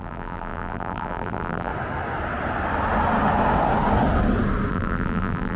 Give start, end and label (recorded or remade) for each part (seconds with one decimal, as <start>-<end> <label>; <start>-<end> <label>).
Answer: 0.0-1.7 remade; 1.7-4.7 recorded; 4.7-5.6 remade